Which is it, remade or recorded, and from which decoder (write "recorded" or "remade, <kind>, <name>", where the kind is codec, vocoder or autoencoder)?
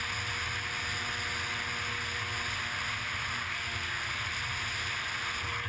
recorded